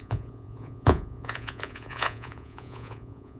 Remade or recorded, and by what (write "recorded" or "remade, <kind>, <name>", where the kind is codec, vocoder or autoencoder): remade, vocoder, Vocos